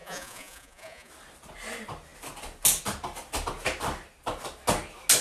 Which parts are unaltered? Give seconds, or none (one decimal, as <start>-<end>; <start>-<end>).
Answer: 1.1-5.2